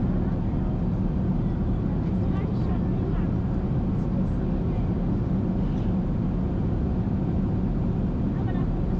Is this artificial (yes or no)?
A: no